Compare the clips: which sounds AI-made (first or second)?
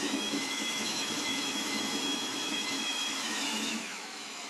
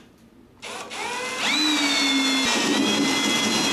first